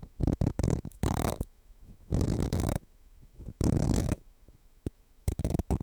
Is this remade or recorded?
remade